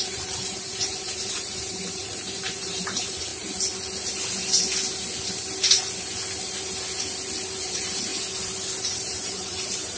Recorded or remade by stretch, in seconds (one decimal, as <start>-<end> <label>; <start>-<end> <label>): 0.0-3.3 remade; 3.3-7.6 recorded; 7.6-8.1 remade; 8.1-8.8 recorded; 8.8-10.0 remade